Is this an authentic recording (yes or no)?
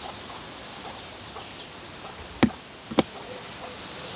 yes